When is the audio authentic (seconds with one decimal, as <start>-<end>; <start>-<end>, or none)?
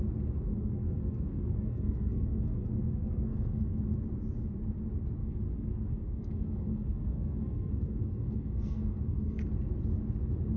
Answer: 0.0-0.5; 3.8-5.2; 9.5-10.6